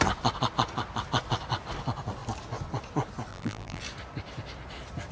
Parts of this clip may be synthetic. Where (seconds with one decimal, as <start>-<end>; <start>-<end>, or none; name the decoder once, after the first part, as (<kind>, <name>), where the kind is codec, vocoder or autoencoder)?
3.3-3.8 (vocoder, BigVGAN v2)